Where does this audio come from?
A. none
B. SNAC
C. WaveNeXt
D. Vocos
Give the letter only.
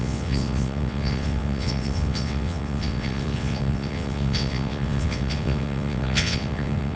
C